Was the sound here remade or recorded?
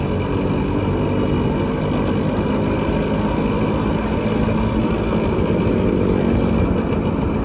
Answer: recorded